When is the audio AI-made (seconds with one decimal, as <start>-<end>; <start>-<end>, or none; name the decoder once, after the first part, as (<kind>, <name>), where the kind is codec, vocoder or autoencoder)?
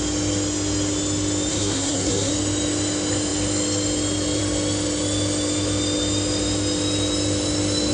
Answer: 1.5-2.3 (codec, SNAC)